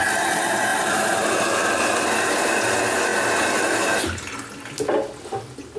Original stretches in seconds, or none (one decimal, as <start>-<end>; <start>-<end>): 0.0-5.8